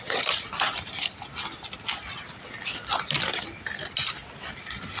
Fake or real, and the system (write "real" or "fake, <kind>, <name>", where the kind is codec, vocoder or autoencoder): real